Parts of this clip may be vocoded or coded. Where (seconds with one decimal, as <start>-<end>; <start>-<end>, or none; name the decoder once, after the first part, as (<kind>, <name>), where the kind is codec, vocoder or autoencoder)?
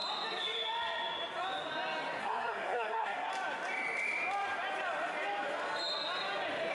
2.2-3.3 (codec, SNAC)